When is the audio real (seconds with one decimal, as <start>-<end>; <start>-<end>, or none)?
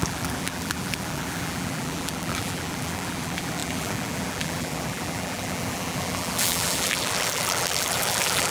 none